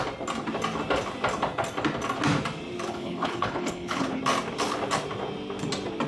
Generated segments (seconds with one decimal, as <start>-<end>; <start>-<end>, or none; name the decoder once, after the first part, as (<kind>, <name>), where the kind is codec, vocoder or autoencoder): 2.9-4.2 (codec, HILCodec)